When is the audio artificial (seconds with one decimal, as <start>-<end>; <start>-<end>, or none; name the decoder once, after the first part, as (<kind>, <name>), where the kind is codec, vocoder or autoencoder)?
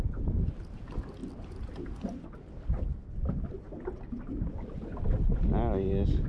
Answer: none